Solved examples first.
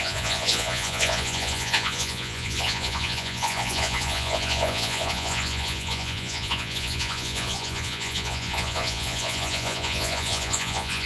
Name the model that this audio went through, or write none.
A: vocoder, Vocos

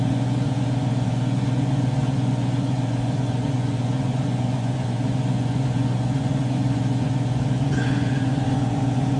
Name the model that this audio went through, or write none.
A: vocoder, Vocos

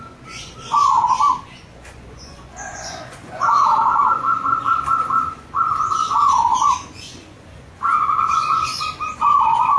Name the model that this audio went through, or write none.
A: vocoder, Vocos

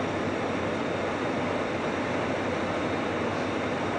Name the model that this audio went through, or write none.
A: none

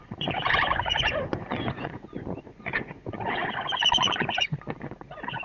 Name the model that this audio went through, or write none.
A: vocoder, Vocos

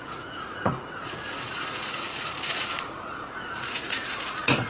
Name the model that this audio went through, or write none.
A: vocoder, Vocos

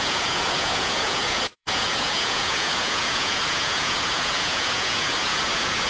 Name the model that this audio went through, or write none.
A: vocoder, Vocos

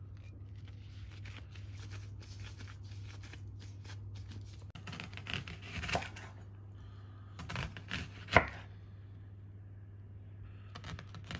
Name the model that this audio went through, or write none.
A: none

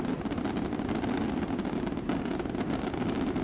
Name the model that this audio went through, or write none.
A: none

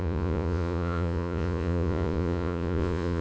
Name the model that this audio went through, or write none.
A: vocoder, Vocos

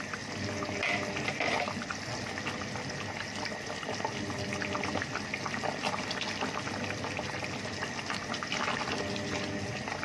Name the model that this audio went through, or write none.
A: none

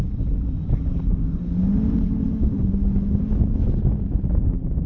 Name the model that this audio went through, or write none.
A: none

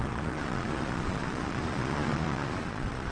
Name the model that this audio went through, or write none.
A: vocoder, Vocos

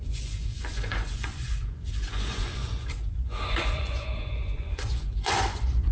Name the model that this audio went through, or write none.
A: vocoder, Vocos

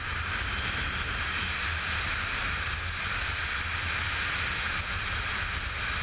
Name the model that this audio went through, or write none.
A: none